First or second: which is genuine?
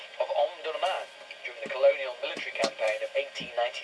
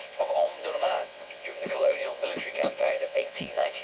first